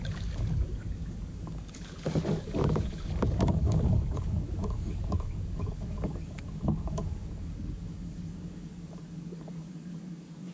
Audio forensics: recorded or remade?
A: remade